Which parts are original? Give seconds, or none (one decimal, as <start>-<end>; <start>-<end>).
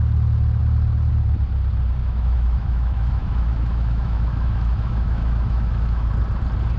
0.0-2.0; 6.1-6.8